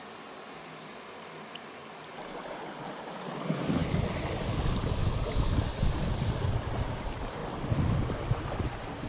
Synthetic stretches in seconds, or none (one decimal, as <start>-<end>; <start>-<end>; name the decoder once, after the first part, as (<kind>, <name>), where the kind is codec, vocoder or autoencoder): none